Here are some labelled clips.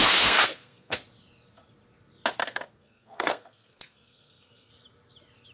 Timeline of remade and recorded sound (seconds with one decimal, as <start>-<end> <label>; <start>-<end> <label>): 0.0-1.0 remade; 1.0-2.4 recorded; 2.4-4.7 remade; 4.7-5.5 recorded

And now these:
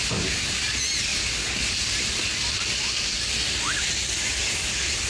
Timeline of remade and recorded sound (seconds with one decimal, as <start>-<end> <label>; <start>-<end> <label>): 0.0-5.1 recorded

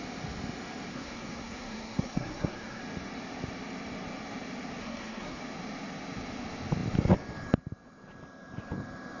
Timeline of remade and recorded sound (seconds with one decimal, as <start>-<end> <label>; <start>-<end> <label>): 0.0-0.9 recorded; 0.9-2.8 remade; 2.8-4.8 recorded; 4.8-5.4 remade; 5.4-9.2 recorded

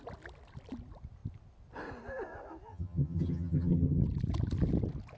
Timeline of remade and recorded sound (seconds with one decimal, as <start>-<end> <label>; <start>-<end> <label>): 0.0-2.7 recorded; 2.7-4.0 remade; 4.0-5.2 recorded

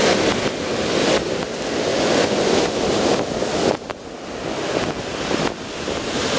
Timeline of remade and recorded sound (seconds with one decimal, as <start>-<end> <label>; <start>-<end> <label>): 0.0-1.9 recorded; 1.9-2.8 remade; 2.8-6.4 recorded

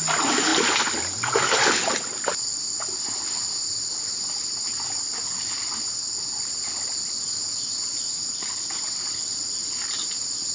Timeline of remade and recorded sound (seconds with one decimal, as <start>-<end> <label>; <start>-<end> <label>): 0.0-10.5 recorded